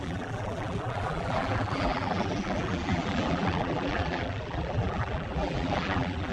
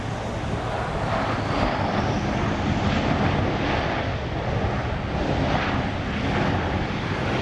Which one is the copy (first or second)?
first